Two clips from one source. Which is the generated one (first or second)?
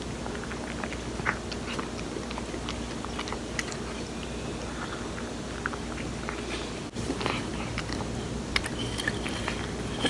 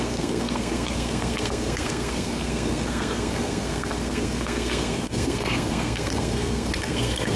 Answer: second